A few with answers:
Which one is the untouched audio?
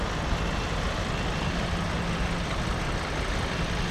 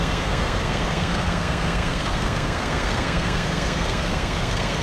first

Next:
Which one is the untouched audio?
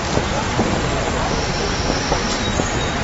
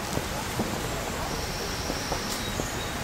first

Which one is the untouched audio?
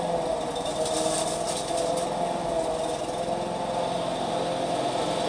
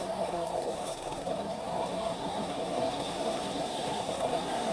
first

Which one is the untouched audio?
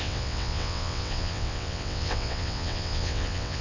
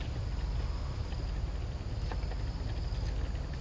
second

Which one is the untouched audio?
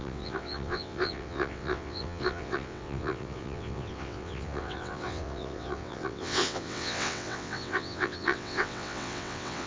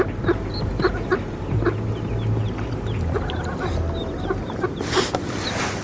second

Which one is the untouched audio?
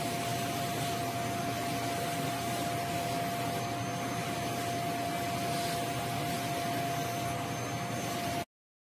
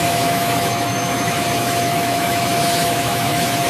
first